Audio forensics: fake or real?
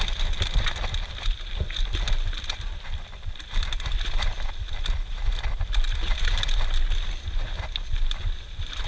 real